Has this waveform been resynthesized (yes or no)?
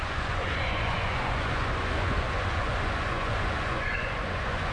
yes